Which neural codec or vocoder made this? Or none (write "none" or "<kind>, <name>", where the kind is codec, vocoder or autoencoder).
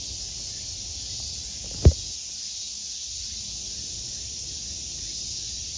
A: none